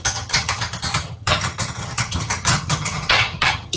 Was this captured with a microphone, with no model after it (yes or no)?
no